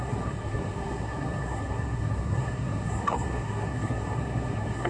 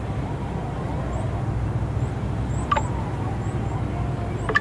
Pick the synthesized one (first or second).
first